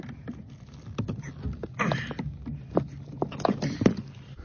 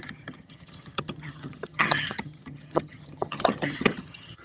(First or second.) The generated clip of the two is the second